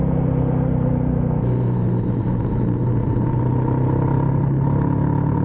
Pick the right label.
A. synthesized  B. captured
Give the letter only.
B